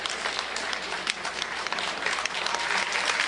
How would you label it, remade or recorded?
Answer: remade